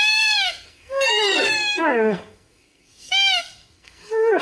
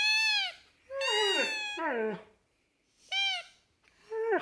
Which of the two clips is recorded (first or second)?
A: second